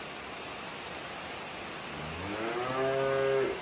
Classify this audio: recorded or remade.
recorded